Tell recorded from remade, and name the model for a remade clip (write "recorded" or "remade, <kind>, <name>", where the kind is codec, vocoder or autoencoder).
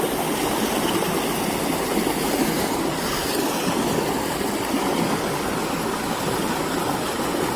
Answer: recorded